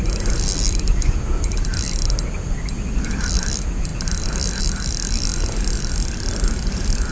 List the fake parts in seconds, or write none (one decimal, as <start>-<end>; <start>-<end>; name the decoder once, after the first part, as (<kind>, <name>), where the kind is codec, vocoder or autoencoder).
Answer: none